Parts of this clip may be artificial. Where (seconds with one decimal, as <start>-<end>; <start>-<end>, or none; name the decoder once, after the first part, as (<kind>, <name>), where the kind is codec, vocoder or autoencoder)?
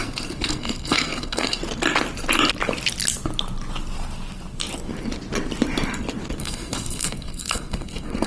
0.0-1.6 (codec, SNAC); 6.4-8.3